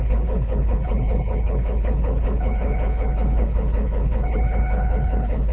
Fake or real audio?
fake